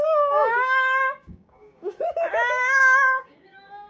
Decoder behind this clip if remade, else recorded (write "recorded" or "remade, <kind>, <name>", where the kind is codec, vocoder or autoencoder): remade, codec, DAC